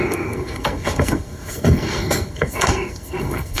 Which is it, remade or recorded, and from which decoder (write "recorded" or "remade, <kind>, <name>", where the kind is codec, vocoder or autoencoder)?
remade, codec, SNAC